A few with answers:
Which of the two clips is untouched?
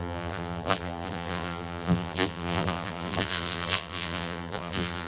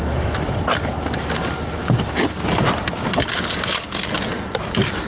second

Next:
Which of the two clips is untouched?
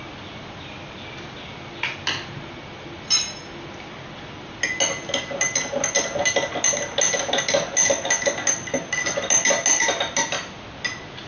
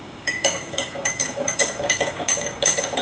first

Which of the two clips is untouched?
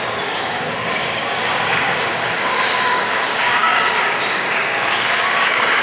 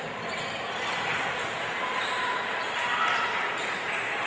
second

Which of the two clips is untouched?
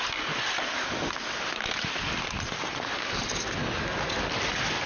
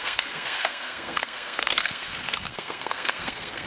first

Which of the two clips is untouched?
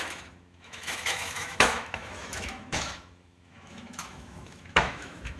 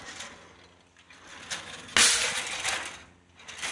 second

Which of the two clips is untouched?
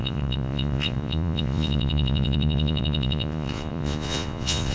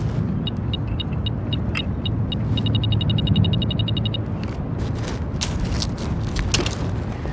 second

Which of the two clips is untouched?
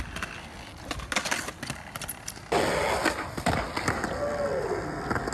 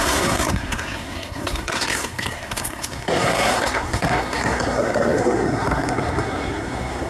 first